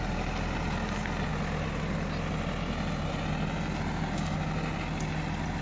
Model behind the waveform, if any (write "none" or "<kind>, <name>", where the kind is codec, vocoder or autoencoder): none